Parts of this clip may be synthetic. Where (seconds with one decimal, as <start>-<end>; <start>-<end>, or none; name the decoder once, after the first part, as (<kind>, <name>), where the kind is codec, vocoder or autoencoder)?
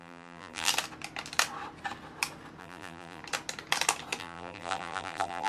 0.0-0.7 (vocoder, BigVGAN v2); 2.6-3.2; 4.2-5.5